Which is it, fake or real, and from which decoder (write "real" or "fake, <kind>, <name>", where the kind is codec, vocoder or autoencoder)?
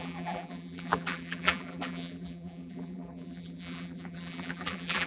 fake, vocoder, BigVGAN v2